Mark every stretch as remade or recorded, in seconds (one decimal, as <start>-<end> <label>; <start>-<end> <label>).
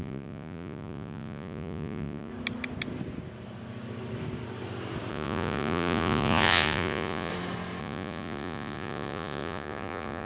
0.0-2.3 remade; 2.3-5.1 recorded; 5.1-7.3 remade; 7.3-7.8 recorded; 7.8-10.3 remade